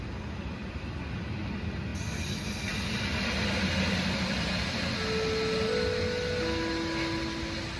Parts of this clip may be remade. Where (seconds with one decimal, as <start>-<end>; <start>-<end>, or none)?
none